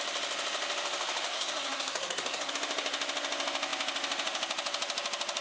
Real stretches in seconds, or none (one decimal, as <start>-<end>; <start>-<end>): 0.0-1.3; 2.5-5.4